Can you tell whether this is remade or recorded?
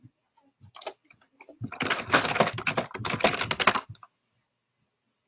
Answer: recorded